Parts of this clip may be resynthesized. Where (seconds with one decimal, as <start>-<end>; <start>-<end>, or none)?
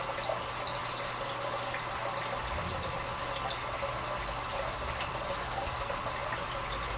5.4-6.0